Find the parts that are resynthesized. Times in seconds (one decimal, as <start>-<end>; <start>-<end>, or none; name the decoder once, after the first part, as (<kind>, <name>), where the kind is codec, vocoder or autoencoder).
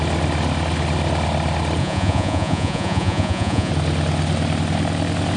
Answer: 1.8-3.7 (vocoder, Vocos)